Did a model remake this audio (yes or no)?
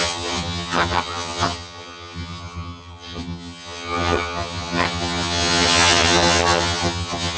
yes